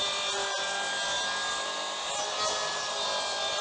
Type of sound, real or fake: real